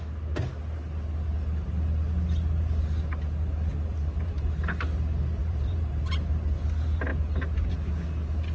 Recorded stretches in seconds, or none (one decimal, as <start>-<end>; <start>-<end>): 0.0-3.9; 4.7-5.4; 6.1-8.5